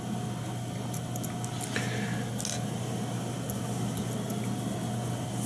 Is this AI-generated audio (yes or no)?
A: no